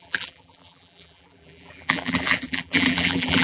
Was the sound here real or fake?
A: fake